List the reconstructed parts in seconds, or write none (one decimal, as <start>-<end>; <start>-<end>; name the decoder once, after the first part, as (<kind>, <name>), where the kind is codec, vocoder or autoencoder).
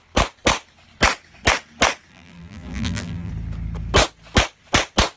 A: 2.1-3.3 (vocoder, BigVGAN v2)